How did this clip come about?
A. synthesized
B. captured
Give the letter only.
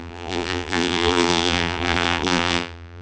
A